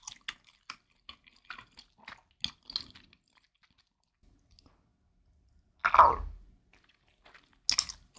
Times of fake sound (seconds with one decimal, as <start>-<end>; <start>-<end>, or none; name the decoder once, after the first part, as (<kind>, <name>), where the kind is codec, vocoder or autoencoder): none